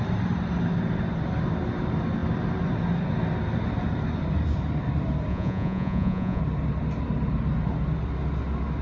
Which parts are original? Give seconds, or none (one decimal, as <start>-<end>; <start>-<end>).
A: 0.0-5.3; 6.4-8.8